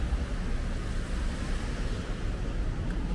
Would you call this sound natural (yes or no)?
yes